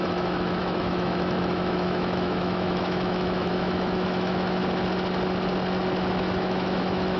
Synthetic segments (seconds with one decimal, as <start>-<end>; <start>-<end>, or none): 0.0-4.6; 6.1-7.2